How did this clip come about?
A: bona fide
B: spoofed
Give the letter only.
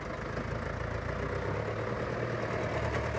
A